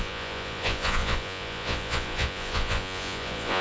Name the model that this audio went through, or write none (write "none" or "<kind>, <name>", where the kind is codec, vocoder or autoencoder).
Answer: vocoder, Vocos